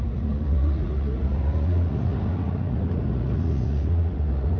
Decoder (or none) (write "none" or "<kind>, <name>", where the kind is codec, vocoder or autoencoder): vocoder, Vocos